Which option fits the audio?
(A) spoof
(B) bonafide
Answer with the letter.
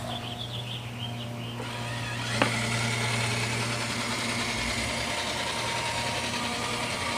B